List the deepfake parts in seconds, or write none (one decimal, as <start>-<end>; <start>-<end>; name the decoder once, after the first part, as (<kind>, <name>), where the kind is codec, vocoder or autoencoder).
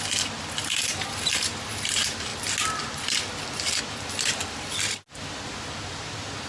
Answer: 0.6-1.8 (vocoder, BigVGAN v2)